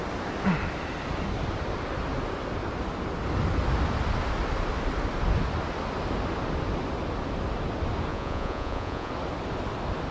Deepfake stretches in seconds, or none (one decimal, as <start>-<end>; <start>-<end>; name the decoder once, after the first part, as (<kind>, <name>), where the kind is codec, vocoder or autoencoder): 8.1-9.1 (vocoder, Vocos)